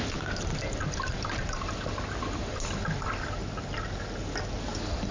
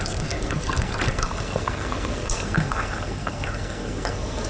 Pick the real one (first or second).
first